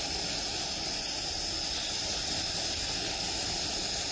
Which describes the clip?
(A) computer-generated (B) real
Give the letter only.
B